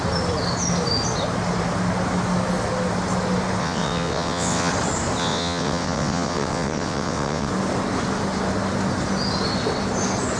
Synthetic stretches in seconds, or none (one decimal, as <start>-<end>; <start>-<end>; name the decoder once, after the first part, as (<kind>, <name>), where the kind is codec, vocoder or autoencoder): 3.6-4.7 (vocoder, WaveNeXt); 5.2-7.5